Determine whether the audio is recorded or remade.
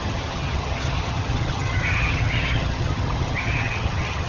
remade